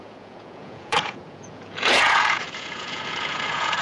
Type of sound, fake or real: fake